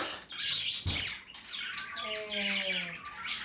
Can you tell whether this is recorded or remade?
recorded